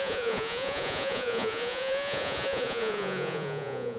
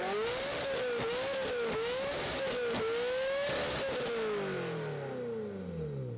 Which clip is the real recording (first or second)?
second